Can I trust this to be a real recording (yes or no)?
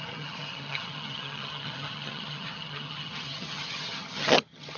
no